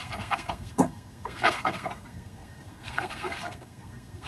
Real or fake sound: fake